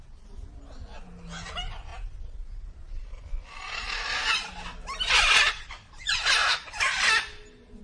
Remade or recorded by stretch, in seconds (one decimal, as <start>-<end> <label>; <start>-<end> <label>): 0.0-7.8 recorded